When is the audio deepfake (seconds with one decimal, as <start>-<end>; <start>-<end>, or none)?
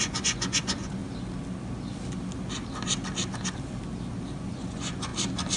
0.0-1.0; 4.4-5.1